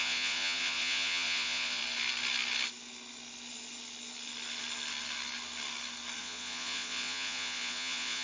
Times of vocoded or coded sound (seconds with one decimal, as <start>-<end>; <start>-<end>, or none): 0.0-1.8; 6.2-8.2